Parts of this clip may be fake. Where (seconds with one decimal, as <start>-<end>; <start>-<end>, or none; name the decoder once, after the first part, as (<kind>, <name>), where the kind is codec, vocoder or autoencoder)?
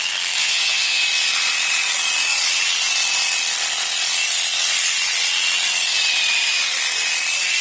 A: 0.4-1.0 (vocoder, WaveNeXt)